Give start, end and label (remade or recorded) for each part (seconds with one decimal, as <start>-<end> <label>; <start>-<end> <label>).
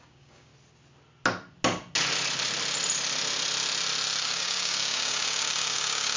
0.0-0.5 remade; 0.5-4.2 recorded; 4.2-6.2 remade